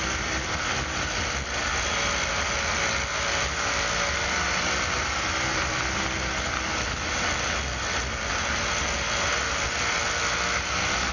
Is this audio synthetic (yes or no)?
no